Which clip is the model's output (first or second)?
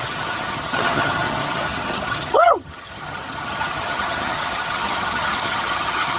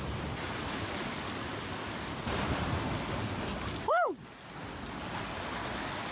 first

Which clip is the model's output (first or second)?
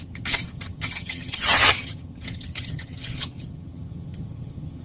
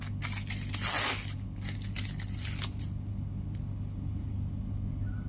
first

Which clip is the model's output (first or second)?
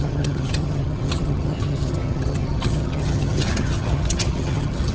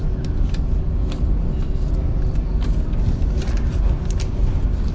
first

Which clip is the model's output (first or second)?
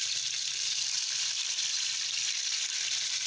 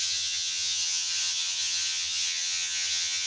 second